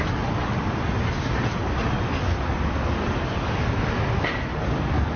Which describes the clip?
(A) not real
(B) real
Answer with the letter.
B